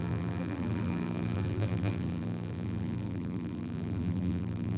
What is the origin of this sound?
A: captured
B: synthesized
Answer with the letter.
B